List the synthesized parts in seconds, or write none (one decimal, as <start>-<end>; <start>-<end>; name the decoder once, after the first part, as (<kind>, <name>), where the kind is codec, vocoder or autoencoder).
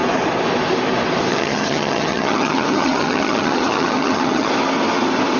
1.3-4.5 (vocoder, HiFi-GAN)